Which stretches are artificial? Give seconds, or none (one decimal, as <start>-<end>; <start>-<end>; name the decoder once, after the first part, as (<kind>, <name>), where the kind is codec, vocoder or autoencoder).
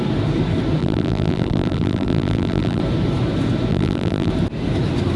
0.8-2.8 (vocoder, BigVGAN v2); 3.7-4.3